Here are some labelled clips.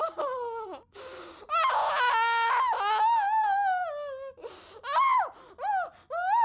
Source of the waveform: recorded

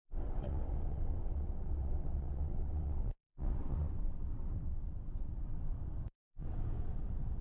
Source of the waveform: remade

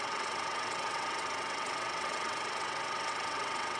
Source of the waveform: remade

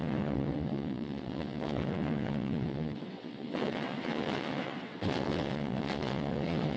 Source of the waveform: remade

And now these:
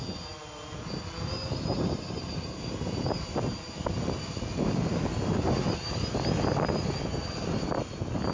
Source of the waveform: recorded